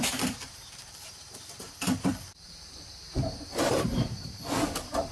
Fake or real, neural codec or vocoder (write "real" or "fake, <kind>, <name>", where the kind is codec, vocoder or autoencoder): fake, vocoder, BigVGAN v2